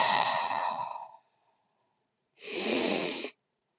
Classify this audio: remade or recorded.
remade